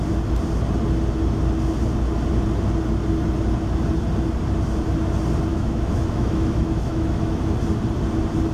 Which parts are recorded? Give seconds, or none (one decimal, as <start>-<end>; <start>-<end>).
0.0-5.5; 7.4-8.5